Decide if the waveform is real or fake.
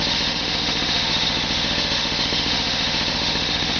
fake